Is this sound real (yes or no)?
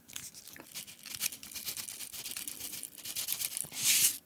yes